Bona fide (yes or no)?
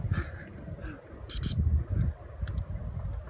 yes